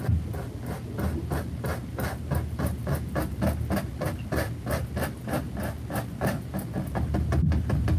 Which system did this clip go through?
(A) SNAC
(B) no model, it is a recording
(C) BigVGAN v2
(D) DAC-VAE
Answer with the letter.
B